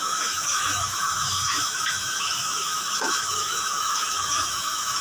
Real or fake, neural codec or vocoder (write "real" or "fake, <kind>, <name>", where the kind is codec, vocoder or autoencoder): fake, autoencoder, DAC-VAE